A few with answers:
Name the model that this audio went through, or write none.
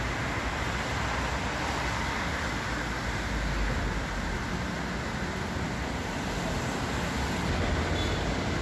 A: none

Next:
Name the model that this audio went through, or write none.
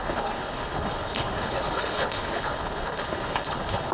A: codec, HILCodec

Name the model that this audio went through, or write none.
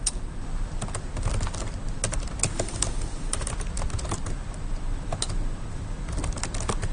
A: none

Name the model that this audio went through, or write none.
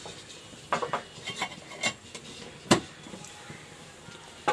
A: none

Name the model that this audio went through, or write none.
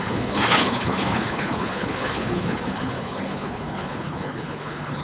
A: codec, HILCodec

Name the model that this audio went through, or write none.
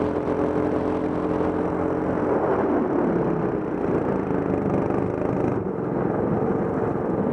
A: none